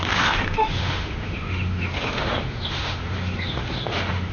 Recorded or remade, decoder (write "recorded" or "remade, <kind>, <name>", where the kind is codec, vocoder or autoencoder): remade, autoencoder, DAC-VAE